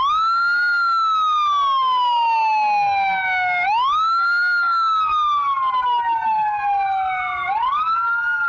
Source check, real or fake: real